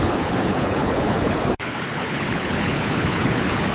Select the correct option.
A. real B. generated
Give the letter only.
B